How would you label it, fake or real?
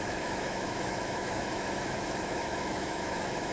fake